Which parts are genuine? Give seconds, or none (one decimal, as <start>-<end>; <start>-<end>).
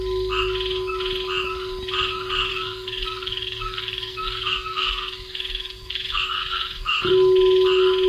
0.0-2.5; 7.1-8.1